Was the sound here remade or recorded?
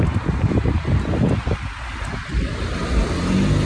recorded